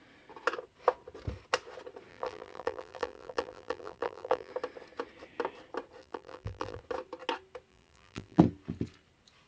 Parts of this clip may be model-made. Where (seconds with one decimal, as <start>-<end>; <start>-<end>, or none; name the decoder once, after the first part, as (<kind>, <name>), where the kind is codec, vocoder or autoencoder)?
2.1-4.5 (vocoder, BigVGAN v2); 6.0-6.8; 7.7-8.4